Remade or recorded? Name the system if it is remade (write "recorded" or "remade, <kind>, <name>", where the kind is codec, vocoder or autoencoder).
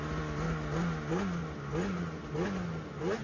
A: recorded